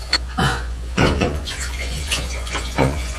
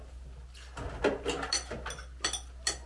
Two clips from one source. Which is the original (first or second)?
second